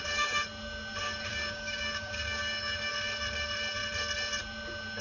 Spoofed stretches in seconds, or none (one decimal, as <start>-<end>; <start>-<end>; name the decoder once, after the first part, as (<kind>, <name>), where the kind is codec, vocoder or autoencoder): 1.3-2.9 (codec, DAC)